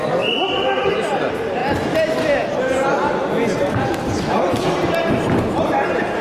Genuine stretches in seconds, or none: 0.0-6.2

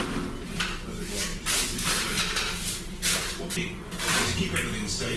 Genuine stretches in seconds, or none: 0.0-1.3; 4.4-5.2

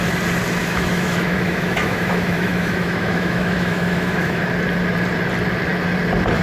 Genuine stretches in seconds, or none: 0.0-0.6; 4.4-6.4

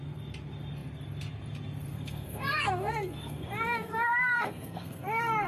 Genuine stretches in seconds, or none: 0.0-1.9

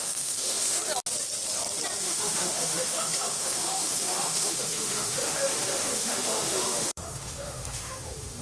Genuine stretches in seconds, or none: 0.8-2.0

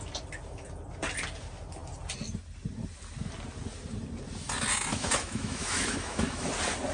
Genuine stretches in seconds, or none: 0.0-4.9; 6.5-6.9

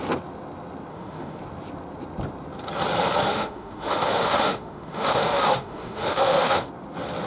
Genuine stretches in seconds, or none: 0.0-0.9; 1.4-3.2; 6.7-7.3

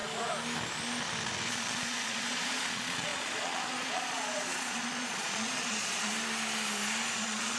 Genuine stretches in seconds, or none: 0.0-1.5; 6.1-7.1